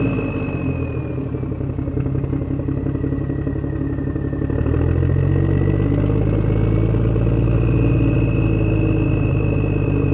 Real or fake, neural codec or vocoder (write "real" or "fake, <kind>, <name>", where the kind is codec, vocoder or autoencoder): real